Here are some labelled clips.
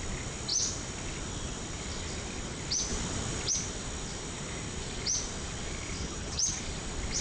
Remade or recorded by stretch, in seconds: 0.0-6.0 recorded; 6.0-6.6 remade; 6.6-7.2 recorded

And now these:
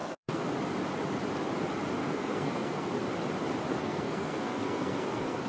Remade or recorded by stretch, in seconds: 0.0-0.5 remade; 0.5-2.0 recorded; 2.0-2.9 remade; 2.9-3.7 recorded; 3.7-5.5 remade

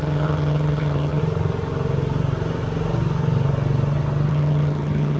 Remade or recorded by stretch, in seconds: 0.0-1.2 remade; 1.2-4.3 recorded; 4.3-5.2 remade